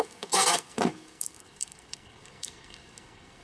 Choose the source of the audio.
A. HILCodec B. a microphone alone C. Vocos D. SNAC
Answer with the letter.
D